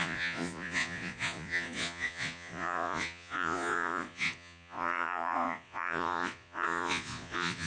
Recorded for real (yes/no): no